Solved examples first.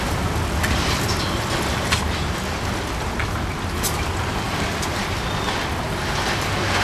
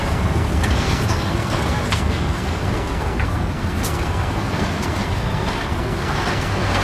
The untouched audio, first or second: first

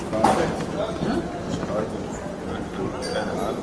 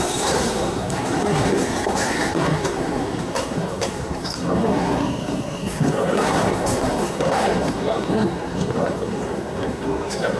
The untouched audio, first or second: first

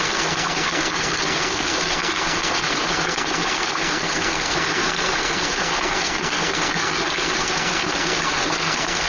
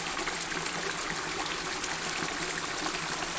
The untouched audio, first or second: second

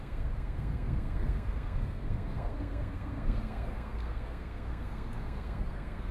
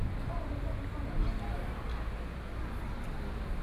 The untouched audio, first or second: second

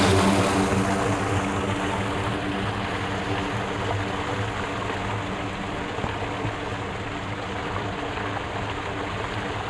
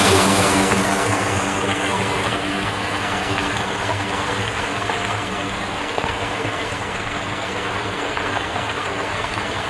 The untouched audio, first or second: first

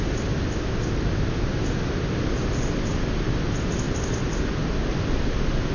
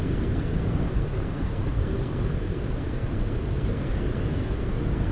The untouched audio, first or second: first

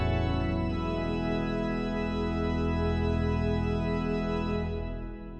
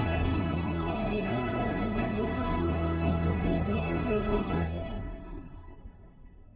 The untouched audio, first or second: first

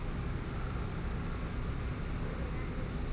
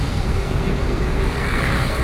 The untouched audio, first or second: first